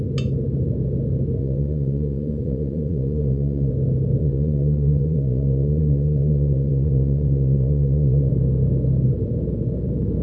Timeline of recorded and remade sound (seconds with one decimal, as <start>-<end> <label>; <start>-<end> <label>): 0.0-1.4 recorded; 1.4-3.7 remade; 3.7-4.2 recorded; 4.2-8.3 remade; 8.3-10.2 recorded